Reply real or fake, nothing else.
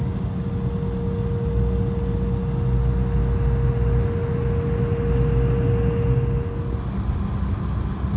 real